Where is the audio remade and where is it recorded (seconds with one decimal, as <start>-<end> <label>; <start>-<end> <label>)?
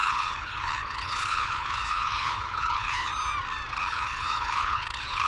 0.0-3.1 remade; 3.1-3.8 recorded; 3.8-5.3 remade